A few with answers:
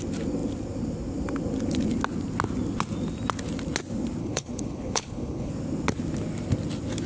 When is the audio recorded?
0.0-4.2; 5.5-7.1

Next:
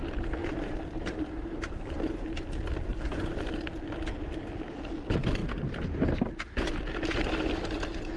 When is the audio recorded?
0.0-0.4; 2.5-2.9; 3.5-8.2

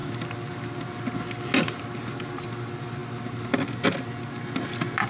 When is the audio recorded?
0.0-5.1

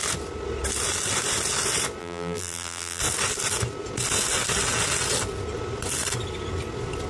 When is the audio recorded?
0.0-2.0; 3.0-7.1

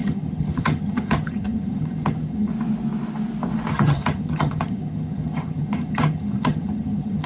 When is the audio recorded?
2.5-3.7

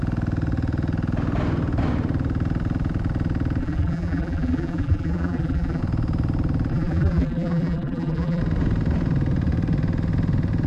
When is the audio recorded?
0.0-3.6; 5.8-6.7; 8.4-10.7

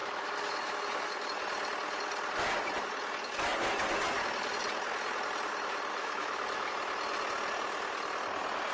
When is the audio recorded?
1.1-5.9; 6.7-8.7

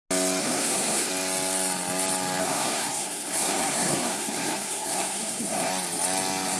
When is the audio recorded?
0.0-0.4; 1.1-2.4; 5.7-6.6